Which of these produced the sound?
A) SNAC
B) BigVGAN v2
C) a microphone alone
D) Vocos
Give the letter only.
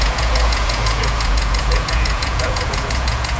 D